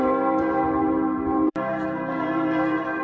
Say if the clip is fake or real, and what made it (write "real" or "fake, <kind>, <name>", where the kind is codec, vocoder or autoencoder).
fake, vocoder, BigVGAN v2